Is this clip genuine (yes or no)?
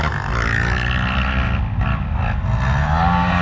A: yes